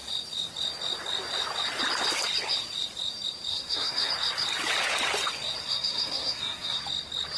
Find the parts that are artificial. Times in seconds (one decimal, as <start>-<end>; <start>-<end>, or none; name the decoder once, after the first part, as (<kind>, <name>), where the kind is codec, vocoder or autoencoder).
3.5-4.1 (codec, SNAC); 5.6-6.8